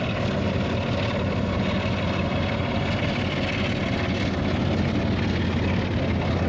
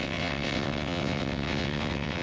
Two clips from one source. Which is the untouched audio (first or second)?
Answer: first